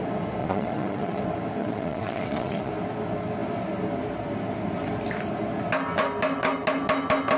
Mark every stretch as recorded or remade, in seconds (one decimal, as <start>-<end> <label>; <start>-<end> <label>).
0.0-0.4 recorded; 0.4-1.2 remade; 1.2-1.6 recorded; 1.6-2.7 remade; 2.7-7.4 recorded